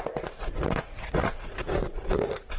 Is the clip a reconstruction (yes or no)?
yes